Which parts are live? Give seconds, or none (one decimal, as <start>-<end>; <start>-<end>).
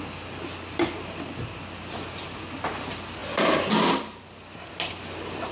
0.0-5.5